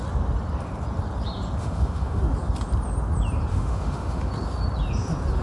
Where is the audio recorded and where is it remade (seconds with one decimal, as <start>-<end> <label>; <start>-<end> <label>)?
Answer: 0.0-1.6 recorded; 1.6-2.2 remade; 2.2-3.5 recorded; 3.5-4.3 remade; 4.3-5.4 recorded